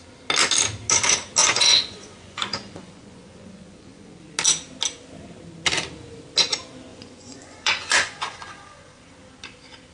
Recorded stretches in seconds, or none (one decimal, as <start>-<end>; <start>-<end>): 0.0-1.4; 4.2-6.9; 9.1-9.9